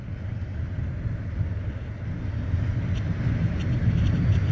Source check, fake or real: real